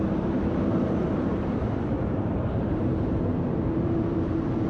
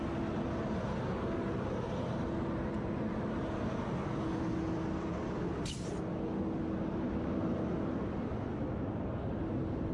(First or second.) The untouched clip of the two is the second